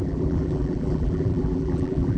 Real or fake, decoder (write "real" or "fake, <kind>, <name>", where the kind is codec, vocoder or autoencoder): fake, vocoder, BigVGAN v2